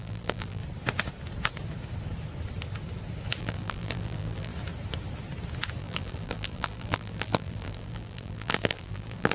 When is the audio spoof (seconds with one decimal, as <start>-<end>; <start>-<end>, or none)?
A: 0.0-0.6; 3.4-4.5; 5.8-9.3